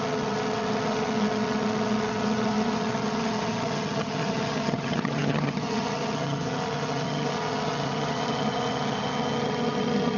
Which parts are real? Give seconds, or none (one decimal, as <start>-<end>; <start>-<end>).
none